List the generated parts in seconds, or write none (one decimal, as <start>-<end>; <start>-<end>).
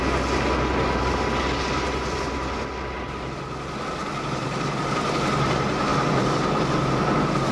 4.0-4.7; 5.9-6.6